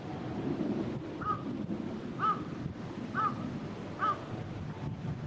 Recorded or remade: recorded